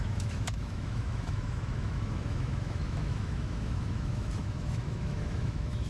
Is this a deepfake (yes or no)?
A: yes